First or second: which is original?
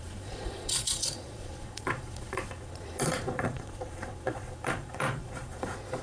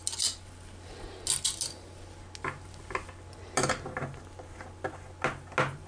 second